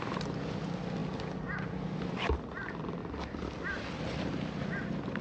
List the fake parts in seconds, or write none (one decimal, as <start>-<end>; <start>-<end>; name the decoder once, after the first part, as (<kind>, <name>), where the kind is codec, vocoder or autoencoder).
0.0-1.0 (vocoder, BigVGAN v2); 2.1-3.0; 4.3-5.2